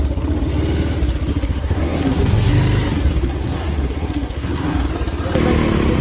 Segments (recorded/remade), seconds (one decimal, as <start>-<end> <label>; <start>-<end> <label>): 0.0-1.3 recorded; 1.3-2.5 remade; 2.5-3.2 recorded; 3.2-4.9 remade; 4.9-6.0 recorded